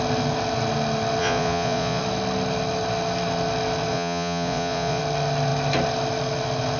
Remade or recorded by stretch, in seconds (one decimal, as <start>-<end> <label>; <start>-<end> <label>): 0.0-1.2 recorded; 1.2-2.0 remade; 2.0-3.9 recorded; 3.9-5.0 remade; 5.0-6.8 recorded